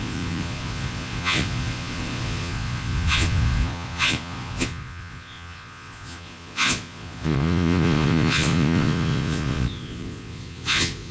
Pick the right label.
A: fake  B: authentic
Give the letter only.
A